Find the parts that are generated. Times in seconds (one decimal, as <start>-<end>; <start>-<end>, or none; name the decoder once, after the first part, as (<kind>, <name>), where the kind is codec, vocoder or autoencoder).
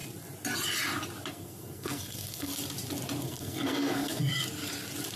1.3-2.5 (codec, SNAC); 3.2-4.3